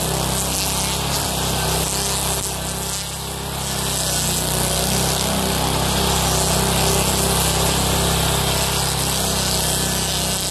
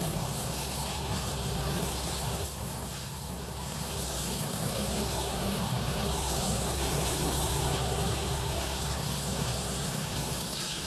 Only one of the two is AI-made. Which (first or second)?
second